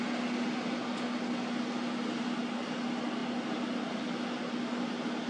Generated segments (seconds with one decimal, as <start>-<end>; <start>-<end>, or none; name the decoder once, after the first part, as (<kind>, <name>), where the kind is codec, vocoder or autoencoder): none